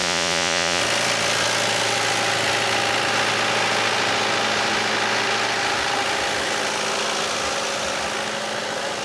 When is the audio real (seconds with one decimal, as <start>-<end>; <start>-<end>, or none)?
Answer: 0.8-9.0